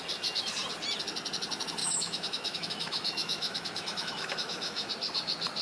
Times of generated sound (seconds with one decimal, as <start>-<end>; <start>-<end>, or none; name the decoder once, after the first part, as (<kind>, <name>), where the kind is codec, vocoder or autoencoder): 1.8-4.9 (autoencoder, DAC-VAE)